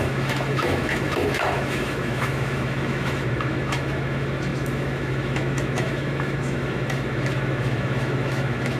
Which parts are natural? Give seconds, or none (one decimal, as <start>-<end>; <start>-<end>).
none